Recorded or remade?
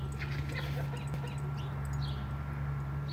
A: recorded